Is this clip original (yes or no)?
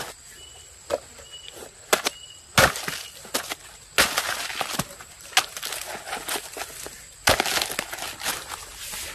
yes